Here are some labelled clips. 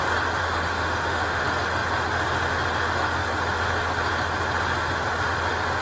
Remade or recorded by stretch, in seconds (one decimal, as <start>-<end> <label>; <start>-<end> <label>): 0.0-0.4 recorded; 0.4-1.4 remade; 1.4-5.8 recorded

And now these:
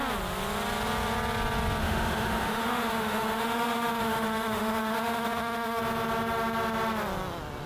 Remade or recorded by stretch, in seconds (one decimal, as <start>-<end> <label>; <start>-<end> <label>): 0.0-1.8 recorded; 1.8-5.8 remade; 5.8-7.7 recorded

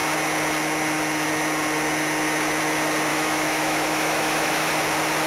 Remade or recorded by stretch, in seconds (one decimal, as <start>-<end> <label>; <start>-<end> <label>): 0.0-3.1 recorded; 3.1-4.7 remade; 4.7-5.3 recorded